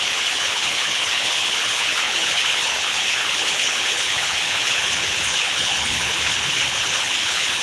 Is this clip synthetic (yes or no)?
yes